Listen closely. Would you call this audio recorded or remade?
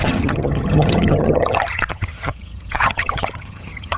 remade